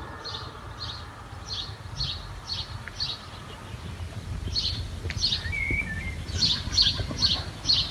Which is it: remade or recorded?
recorded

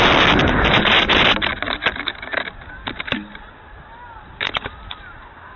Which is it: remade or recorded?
recorded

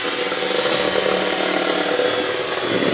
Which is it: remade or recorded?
recorded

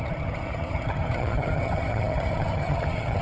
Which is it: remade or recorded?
remade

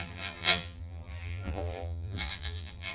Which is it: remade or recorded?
remade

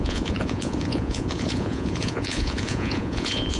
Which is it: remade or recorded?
remade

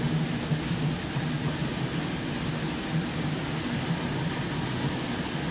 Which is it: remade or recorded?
recorded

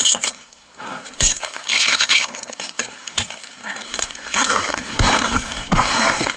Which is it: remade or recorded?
remade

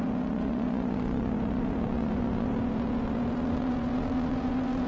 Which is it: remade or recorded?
remade